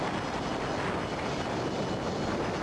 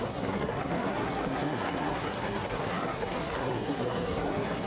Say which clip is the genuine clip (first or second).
first